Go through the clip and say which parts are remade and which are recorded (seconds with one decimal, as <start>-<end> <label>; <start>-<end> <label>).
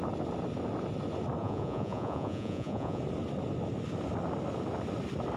0.0-1.4 recorded; 1.4-3.0 remade; 3.0-5.4 recorded